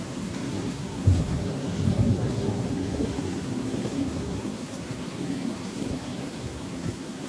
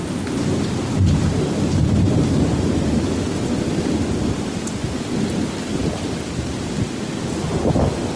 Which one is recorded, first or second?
second